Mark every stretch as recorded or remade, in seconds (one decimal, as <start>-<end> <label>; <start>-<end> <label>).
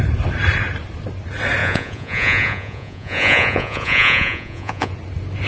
0.0-1.6 recorded; 1.6-4.9 remade; 4.9-5.5 recorded